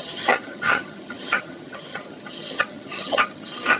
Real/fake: fake